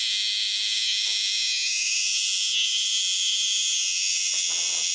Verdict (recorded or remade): recorded